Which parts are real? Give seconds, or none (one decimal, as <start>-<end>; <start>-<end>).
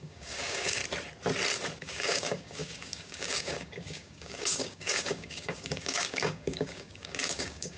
0.8-1.8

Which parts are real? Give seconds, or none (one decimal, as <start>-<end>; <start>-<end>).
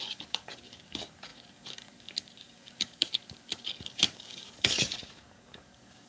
none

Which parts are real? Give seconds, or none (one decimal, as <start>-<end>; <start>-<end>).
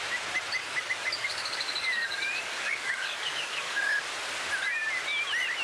0.0-0.6; 4.0-5.6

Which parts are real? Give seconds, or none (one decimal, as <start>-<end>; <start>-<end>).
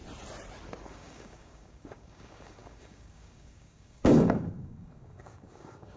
0.0-0.9